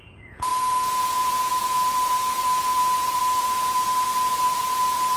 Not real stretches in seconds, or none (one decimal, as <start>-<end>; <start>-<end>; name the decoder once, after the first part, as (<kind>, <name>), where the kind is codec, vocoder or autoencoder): 0.0-5.2 (vocoder, Vocos)